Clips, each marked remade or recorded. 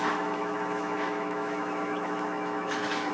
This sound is remade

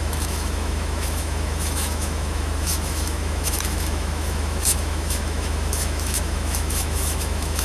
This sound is remade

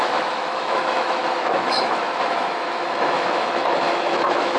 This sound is remade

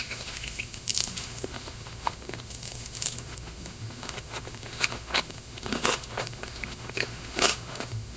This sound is remade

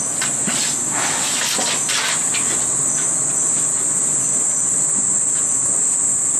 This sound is recorded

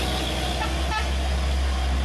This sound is recorded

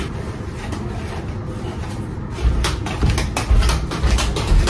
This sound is recorded